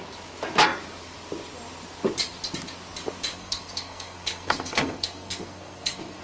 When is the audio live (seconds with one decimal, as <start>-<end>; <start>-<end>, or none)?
0.0-3.3